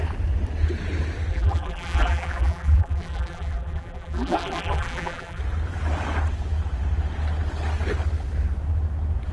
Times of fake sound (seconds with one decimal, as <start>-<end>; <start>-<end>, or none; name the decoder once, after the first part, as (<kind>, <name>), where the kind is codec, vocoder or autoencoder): 1.3-5.4 (vocoder, BigVGAN v2)